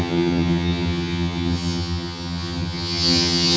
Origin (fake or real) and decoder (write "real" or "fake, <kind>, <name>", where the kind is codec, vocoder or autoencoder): fake, vocoder, HiFi-GAN